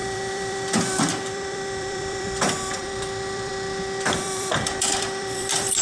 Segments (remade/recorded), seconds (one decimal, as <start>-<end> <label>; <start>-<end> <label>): 0.0-3.5 remade; 3.5-4.0 recorded; 4.0-5.8 remade